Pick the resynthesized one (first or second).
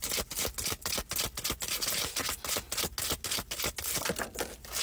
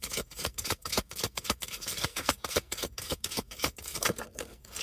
second